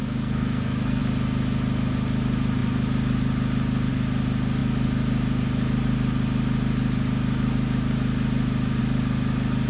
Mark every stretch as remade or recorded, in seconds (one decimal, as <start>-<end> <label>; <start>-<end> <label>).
0.0-1.0 remade; 1.0-9.7 recorded